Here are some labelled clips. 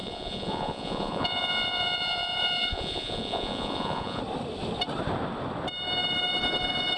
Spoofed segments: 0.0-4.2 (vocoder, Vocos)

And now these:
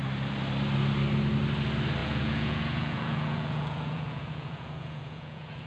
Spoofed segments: 2.0-5.7 (vocoder, Vocos)